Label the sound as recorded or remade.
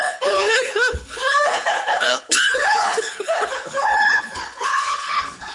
remade